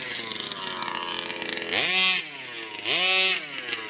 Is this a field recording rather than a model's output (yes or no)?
yes